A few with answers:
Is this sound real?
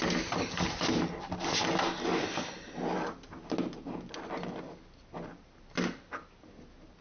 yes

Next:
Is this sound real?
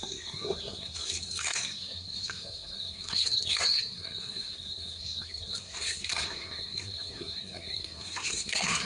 no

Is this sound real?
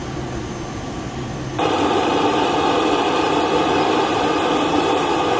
yes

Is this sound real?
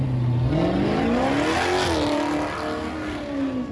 yes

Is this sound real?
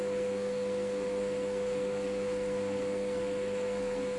no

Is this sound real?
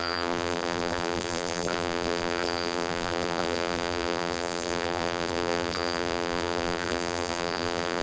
no